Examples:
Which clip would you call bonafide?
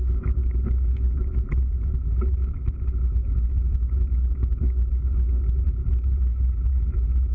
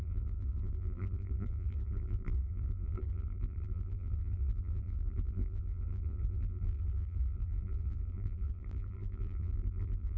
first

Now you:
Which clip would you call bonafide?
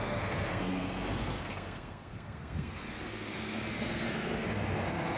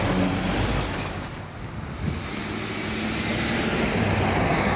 second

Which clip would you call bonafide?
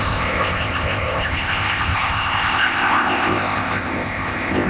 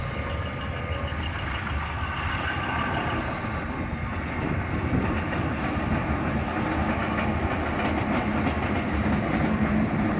second